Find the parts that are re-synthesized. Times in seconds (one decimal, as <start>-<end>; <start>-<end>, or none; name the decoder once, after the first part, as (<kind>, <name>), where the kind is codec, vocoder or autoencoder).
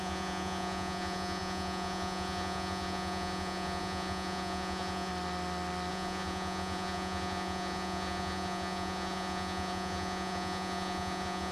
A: 0.0-5.1 (vocoder, Vocos); 5.9-11.5